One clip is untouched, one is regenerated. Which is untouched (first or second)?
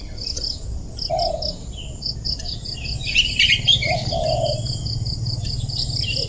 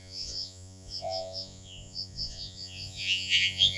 first